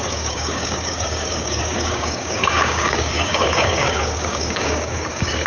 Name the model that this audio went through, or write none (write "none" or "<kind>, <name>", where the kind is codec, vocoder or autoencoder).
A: codec, DAC